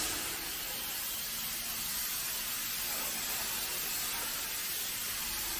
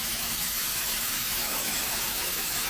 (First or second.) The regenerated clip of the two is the second